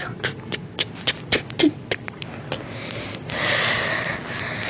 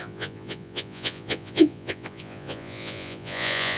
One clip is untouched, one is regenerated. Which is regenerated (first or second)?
second